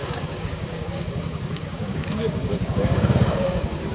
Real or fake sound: fake